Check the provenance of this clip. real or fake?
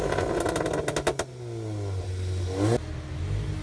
real